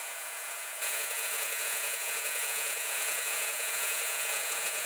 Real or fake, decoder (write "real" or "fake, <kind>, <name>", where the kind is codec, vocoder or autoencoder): fake, vocoder, Vocos